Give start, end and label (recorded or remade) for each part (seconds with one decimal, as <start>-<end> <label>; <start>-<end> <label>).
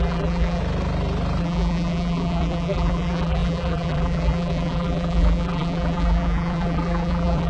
0.0-0.6 remade; 0.6-1.4 recorded; 1.4-7.5 remade